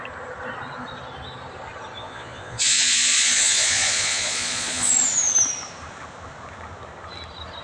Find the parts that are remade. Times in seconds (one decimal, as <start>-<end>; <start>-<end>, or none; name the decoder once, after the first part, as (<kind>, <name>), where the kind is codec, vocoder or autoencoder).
2.0-4.9 (vocoder, Vocos)